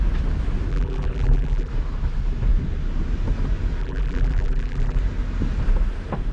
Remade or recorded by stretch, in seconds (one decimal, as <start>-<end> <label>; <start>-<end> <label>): 0.0-0.7 recorded; 0.7-1.7 remade; 1.7-3.8 recorded; 3.8-5.0 remade; 5.0-6.3 recorded